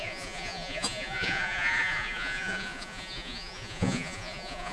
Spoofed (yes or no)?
yes